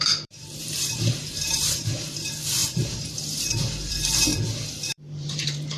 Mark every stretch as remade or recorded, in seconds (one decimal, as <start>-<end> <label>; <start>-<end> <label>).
0.0-4.3 remade; 4.3-4.9 recorded; 4.9-5.8 remade